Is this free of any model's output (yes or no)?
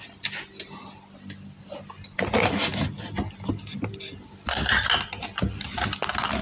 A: yes